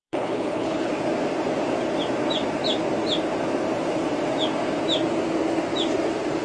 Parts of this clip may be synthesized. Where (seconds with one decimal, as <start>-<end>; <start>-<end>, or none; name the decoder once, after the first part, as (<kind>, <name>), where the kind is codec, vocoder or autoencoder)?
0.0-0.9 (codec, HILCodec)